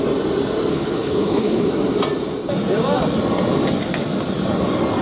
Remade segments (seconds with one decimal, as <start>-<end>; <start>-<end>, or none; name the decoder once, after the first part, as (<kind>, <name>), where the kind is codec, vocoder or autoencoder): 0.7-1.7 (codec, HILCodec)